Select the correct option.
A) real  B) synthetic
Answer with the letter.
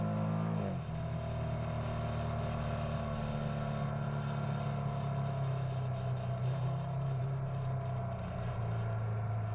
A